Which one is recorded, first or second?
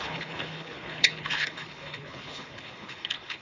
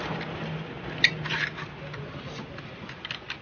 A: second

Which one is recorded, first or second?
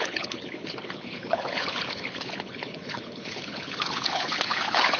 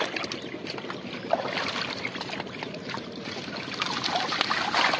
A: second